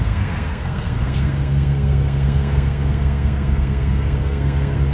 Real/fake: fake